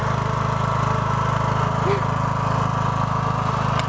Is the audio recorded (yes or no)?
yes